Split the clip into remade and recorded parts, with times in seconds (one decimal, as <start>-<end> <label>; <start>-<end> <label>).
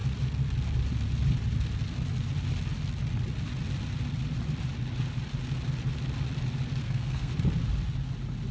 0.0-6.8 recorded; 6.8-7.3 remade; 7.3-8.5 recorded